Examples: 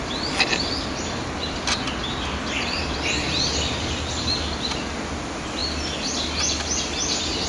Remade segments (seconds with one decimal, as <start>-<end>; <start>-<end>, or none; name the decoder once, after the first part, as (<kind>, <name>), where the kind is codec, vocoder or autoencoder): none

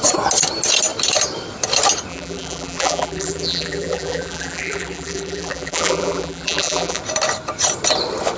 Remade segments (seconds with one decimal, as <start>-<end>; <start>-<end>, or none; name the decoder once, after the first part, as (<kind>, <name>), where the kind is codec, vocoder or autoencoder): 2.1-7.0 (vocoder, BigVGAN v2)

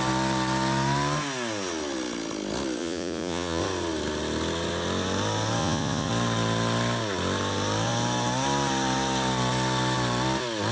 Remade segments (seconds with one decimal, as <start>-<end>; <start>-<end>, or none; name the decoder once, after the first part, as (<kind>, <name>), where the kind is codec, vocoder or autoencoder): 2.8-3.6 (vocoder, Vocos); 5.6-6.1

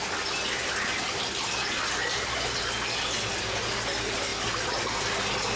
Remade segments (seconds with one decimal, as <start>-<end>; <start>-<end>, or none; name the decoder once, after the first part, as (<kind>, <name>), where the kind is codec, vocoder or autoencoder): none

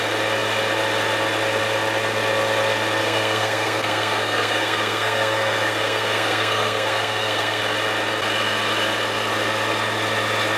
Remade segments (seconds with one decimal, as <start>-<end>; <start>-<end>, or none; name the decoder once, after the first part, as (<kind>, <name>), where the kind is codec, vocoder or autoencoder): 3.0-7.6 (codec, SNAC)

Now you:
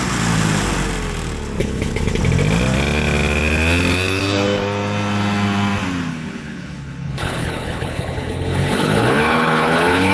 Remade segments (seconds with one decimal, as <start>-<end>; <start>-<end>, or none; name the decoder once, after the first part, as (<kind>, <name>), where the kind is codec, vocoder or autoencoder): 1.6-2.2 (codec, HILCodec); 6.1-10.1